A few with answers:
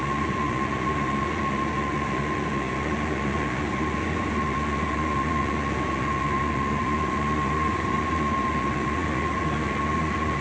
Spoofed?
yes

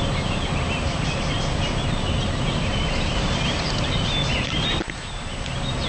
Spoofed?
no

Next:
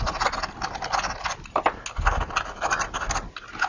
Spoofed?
no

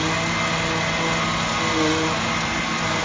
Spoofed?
no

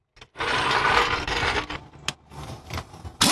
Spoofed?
no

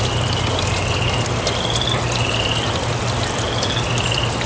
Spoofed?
no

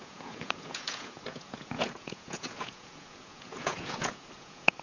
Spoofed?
yes